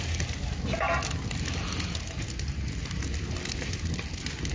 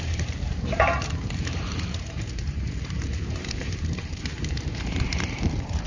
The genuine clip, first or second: first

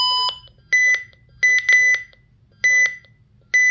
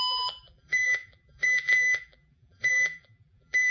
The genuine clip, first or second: first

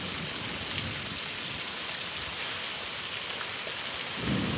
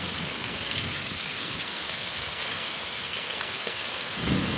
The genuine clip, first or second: first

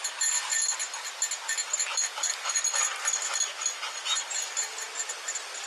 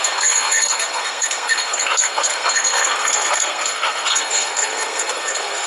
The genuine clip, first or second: first